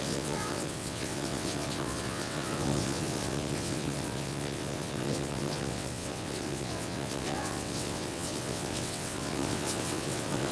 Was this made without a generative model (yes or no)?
no